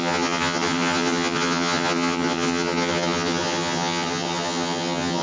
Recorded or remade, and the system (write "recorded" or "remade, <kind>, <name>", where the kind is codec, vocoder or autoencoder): remade, vocoder, HiFi-GAN